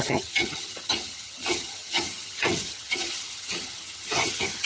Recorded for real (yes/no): no